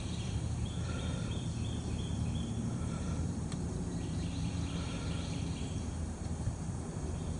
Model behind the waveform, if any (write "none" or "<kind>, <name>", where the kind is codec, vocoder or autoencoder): vocoder, BigVGAN v2